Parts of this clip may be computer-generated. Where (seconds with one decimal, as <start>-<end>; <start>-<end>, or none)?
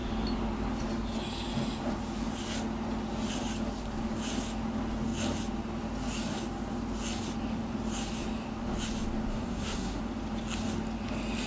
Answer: 9.3-10.0